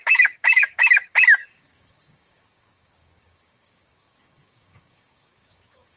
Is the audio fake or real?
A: fake